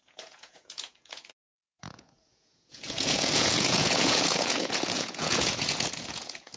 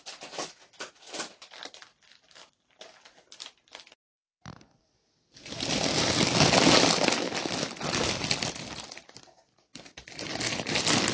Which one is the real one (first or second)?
second